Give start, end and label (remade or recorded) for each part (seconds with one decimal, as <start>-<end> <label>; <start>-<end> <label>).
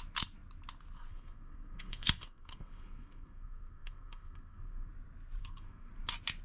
0.0-1.1 recorded; 1.1-4.9 remade; 4.9-5.4 recorded; 5.4-5.9 remade; 5.9-6.4 recorded